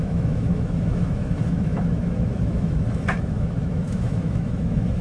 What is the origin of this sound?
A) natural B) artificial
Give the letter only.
B